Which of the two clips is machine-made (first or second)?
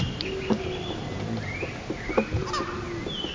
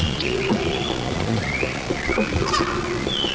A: second